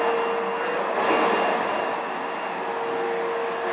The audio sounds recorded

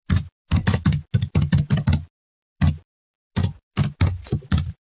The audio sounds recorded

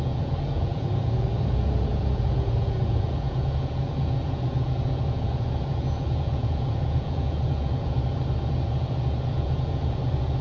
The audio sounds remade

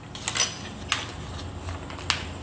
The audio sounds recorded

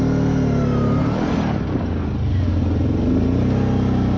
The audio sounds recorded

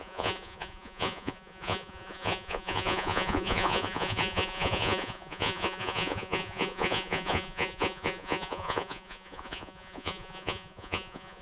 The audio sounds remade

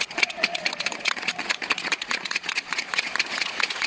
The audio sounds remade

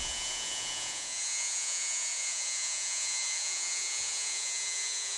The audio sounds remade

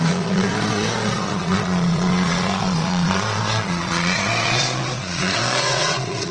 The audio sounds remade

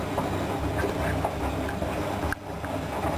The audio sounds recorded